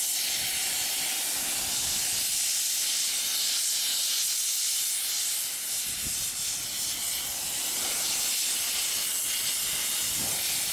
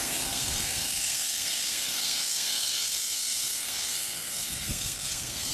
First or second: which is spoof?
second